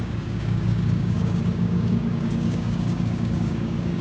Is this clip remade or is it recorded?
remade